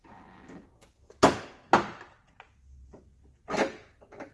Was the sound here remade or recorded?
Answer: recorded